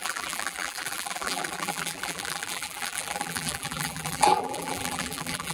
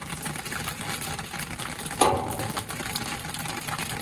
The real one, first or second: second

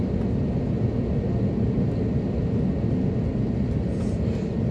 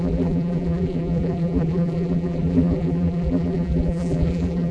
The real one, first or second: first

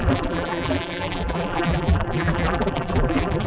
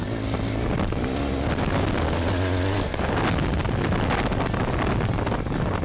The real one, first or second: second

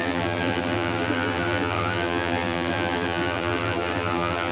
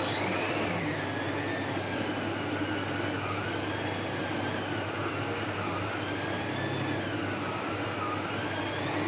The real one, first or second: second